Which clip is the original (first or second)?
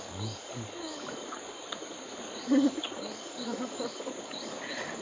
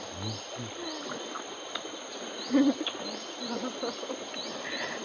second